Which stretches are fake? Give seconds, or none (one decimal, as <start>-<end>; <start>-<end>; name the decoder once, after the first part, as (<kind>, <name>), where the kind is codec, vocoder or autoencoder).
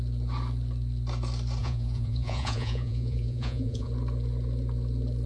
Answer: 1.6-3.9 (vocoder, Vocos)